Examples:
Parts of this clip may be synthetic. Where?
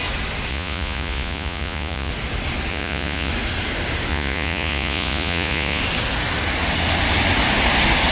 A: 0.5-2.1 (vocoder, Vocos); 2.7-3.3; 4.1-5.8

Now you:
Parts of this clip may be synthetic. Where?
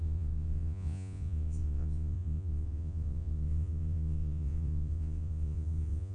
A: 0.0-6.1 (vocoder, Vocos)